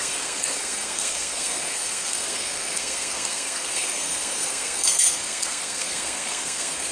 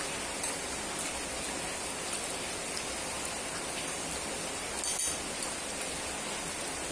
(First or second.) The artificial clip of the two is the first